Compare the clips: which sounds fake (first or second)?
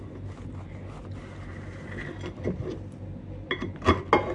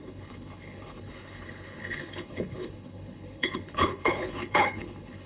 second